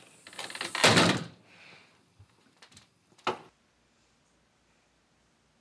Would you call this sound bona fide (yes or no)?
yes